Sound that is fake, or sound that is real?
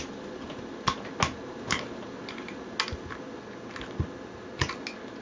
real